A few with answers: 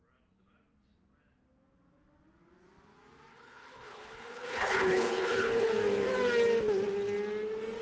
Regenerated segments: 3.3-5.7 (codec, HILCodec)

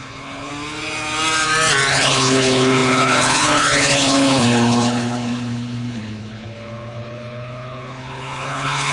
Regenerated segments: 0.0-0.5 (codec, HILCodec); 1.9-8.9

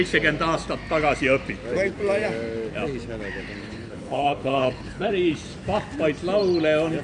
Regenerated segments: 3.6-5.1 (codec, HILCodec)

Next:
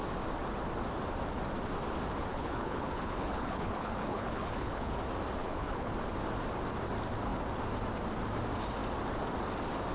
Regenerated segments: 2.3-5.0 (codec, HILCodec); 5.4-5.9